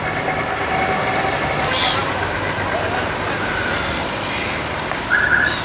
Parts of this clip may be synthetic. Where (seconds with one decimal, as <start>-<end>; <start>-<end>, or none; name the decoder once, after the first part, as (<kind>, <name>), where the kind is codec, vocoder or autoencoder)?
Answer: none